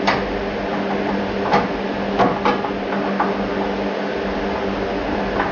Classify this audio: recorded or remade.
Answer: recorded